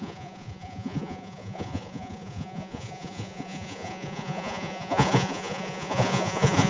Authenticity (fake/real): fake